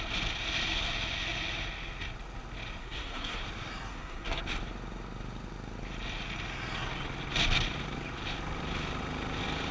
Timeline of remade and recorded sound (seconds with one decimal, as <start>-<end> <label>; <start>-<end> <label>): 0.0-2.8 recorded; 2.8-3.4 remade; 3.4-3.9 recorded; 3.9-4.4 remade; 4.4-9.7 recorded